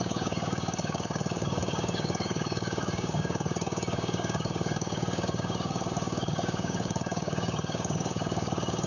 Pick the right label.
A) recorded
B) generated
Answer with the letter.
B